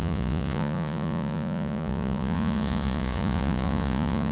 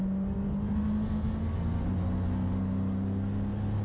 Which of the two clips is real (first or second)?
second